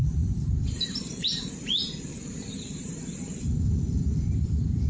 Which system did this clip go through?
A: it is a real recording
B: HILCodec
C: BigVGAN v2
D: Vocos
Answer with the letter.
C